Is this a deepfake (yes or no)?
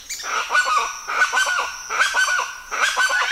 no